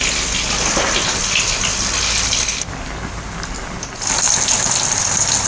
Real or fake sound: real